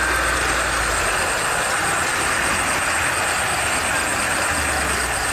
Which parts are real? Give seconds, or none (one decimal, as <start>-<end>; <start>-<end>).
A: 0.0-5.3